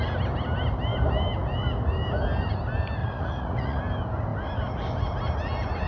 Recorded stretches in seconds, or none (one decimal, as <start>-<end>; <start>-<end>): 0.0-3.0; 3.8-5.9